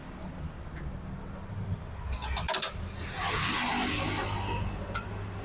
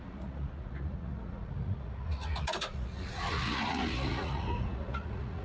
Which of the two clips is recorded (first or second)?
first